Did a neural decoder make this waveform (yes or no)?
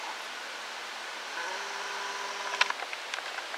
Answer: no